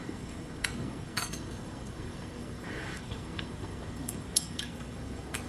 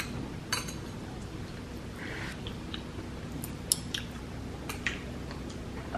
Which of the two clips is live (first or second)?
second